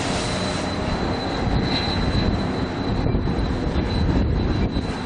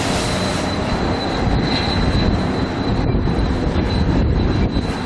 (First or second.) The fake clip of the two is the second